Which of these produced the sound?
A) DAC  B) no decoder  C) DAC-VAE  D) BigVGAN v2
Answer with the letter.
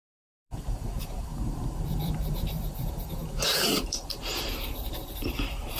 D